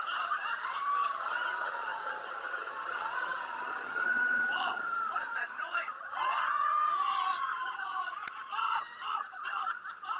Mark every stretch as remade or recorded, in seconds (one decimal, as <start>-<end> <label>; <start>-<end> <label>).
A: 0.0-10.2 remade